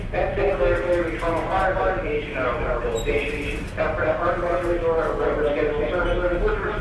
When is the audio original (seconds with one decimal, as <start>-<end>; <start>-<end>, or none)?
0.0-6.8